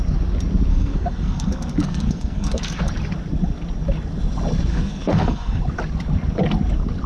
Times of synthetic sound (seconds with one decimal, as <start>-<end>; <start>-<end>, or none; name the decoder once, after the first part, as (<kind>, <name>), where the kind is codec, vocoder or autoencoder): 0.7-2.8 (codec, SNAC); 4.7-5.6